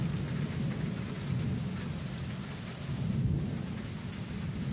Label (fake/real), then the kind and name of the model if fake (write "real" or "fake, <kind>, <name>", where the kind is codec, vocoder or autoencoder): real